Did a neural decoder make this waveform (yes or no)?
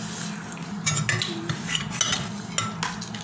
no